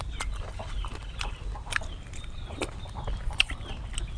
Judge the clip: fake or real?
fake